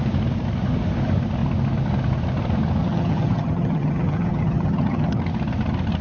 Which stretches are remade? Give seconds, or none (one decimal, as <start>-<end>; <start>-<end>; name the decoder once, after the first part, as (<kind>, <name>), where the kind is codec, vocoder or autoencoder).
2.8-5.2 (vocoder, HiFi-GAN)